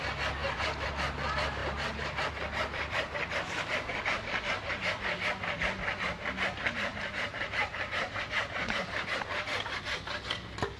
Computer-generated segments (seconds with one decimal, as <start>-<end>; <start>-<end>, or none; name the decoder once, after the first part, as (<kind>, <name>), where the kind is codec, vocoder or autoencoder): 0.4-0.9 (vocoder, BigVGAN v2); 6.9-9.6